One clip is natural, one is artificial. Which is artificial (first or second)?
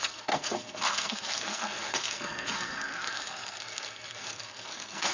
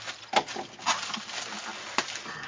first